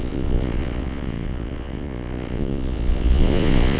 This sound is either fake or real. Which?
fake